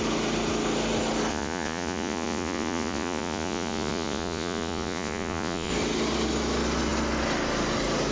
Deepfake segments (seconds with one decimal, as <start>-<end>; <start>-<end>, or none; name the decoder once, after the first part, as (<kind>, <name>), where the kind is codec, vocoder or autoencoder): 1.3-5.7 (vocoder, Vocos)